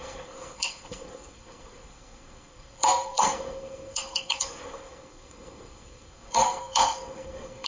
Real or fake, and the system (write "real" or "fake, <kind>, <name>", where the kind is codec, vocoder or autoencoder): fake, codec, SNAC